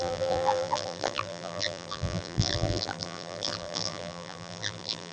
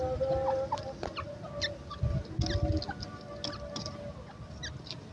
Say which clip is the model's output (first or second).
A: first